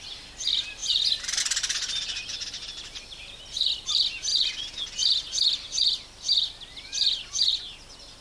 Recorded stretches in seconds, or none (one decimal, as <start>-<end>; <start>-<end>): 0.0-8.2